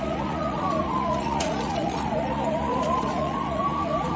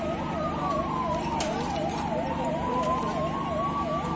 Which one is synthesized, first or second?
first